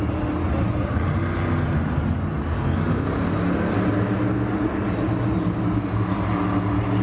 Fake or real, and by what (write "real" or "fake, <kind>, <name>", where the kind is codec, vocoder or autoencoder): real